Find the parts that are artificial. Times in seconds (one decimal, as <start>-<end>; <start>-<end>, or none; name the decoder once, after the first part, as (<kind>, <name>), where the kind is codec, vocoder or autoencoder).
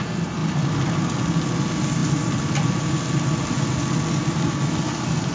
none